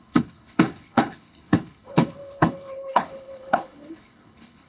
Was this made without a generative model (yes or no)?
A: no